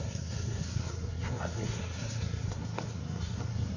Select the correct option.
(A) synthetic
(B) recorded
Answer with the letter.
A